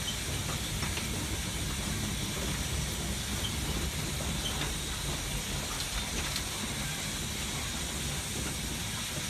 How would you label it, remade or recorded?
recorded